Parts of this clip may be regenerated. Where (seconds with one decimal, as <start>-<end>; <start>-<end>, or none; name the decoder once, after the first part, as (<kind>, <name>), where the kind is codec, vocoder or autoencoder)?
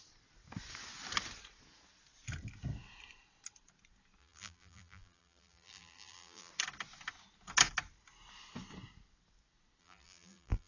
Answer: 4.2-6.5 (vocoder, BigVGAN v2); 9.8-10.7